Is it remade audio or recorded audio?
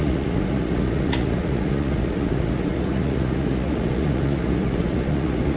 remade